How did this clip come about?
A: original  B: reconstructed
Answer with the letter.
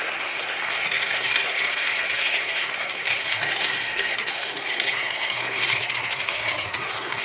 B